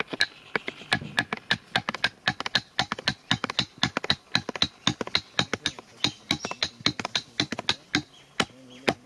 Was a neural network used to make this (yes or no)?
no